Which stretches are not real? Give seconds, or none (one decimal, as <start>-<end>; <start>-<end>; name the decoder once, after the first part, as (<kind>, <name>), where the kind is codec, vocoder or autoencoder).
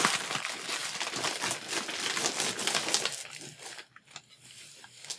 none